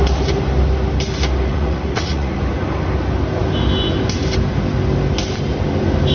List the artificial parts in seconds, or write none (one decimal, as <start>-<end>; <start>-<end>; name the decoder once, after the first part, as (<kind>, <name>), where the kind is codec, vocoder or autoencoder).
1.5-2.4 (vocoder, Vocos)